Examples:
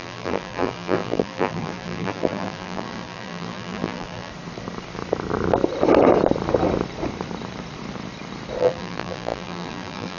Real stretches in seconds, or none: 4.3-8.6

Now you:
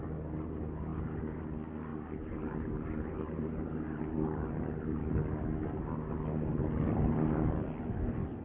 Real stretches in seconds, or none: 0.0-0.9; 1.4-1.9; 4.0-8.4

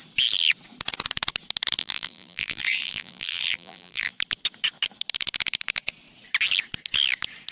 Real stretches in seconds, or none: 0.0-1.8; 4.1-7.5

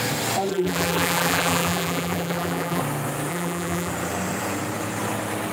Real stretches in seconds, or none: 0.0-0.5; 2.8-3.3; 3.9-5.5

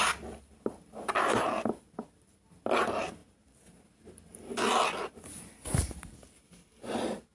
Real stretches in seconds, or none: 0.0-7.3

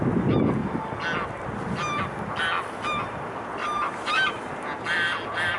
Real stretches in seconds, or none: 0.0-3.6; 4.3-5.6